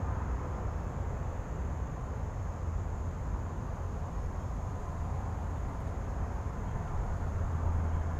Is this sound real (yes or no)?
yes